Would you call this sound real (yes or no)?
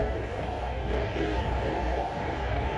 no